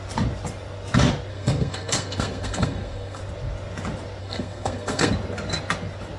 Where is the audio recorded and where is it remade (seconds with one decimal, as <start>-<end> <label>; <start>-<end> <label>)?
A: 0.0-1.3 recorded; 1.3-3.2 remade; 3.2-4.2 recorded; 4.2-5.1 remade; 5.1-6.2 recorded